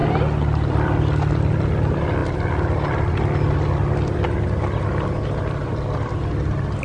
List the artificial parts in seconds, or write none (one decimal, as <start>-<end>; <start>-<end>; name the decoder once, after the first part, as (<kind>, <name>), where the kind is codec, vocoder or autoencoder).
0.0-1.0 (vocoder, BigVGAN v2); 2.2-3.1; 5.4-6.1